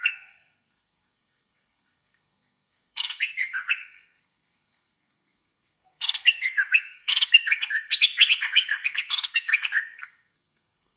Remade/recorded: remade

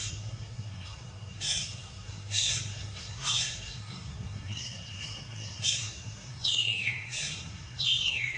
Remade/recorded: remade